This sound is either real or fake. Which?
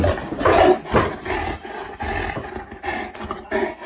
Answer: real